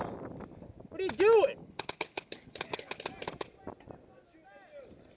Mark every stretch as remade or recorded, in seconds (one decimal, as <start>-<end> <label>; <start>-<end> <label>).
0.0-1.6 recorded; 1.6-3.0 remade; 3.0-5.2 recorded